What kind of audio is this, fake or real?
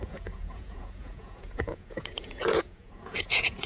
fake